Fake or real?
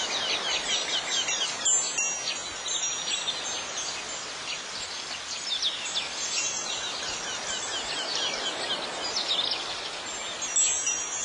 real